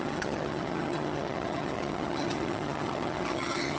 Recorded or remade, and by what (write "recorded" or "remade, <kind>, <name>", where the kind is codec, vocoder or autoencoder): remade, vocoder, HiFi-GAN